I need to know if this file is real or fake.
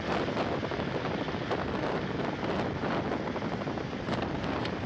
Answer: real